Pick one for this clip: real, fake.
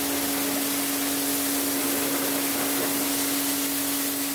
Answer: real